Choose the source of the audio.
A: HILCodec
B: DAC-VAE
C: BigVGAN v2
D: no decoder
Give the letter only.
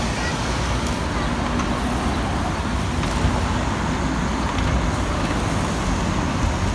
D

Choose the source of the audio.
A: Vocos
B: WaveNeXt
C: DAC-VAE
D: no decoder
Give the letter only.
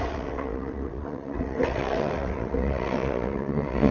B